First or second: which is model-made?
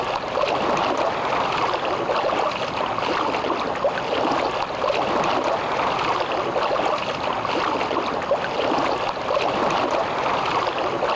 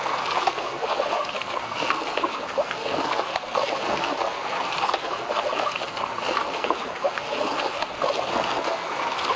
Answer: second